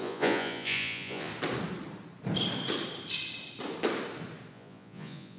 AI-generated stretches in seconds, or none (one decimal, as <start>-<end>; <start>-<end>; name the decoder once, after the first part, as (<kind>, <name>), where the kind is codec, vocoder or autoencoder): 0.0-1.3 (vocoder, Vocos); 4.5-5.4